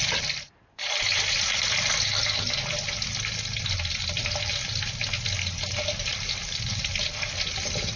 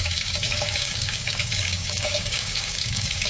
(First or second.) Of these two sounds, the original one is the first